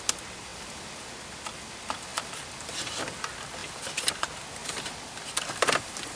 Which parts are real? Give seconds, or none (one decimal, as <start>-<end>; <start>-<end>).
0.0-2.1; 3.2-3.6; 4.1-4.6